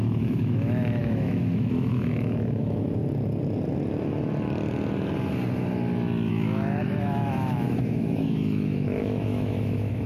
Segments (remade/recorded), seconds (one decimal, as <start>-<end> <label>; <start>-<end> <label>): 0.0-3.0 remade; 3.0-6.3 recorded; 6.3-10.1 remade